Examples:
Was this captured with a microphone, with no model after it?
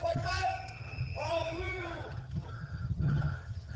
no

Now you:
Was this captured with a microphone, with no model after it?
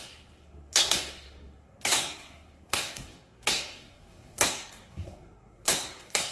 no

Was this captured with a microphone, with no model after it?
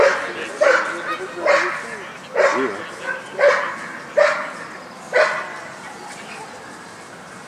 yes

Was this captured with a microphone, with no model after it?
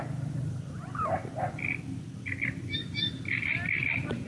yes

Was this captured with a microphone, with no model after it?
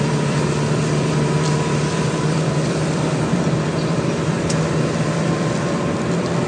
no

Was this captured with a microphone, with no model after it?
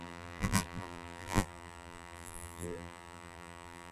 no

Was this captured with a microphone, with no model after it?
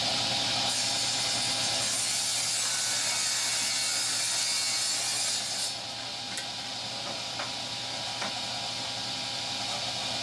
yes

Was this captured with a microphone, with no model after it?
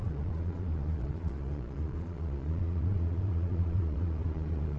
no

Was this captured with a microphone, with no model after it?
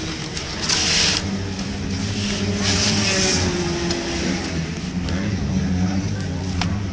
yes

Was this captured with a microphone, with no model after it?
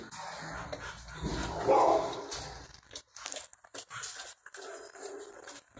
yes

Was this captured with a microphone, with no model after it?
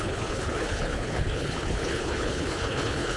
no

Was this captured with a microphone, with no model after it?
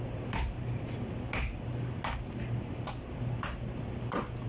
yes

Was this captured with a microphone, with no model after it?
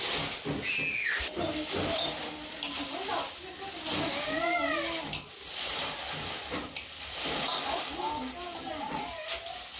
yes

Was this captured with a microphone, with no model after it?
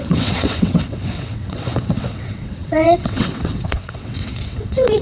no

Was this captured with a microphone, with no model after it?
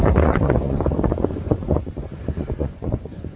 no